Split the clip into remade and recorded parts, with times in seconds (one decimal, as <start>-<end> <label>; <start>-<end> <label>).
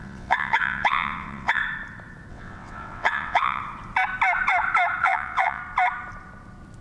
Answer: 0.0-1.6 remade; 1.6-2.3 recorded; 2.3-3.6 remade; 3.6-5.0 recorded; 5.0-5.6 remade; 5.6-6.8 recorded